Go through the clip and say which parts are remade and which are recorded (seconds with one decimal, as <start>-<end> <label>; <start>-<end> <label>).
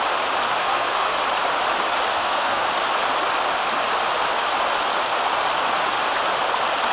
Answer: 0.0-0.6 recorded; 0.6-1.1 remade; 1.1-2.1 recorded; 2.1-2.7 remade; 2.7-6.9 recorded